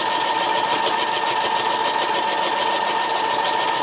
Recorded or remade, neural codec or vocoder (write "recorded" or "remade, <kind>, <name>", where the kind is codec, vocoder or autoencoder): recorded